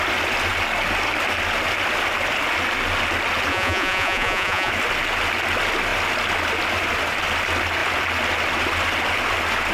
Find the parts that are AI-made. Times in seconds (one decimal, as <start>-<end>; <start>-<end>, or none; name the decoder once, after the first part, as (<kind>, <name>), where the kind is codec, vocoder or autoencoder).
3.5-4.7 (vocoder, Vocos)